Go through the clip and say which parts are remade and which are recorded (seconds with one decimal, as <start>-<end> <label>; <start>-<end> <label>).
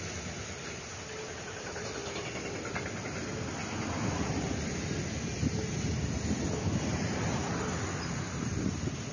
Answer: 0.0-9.1 recorded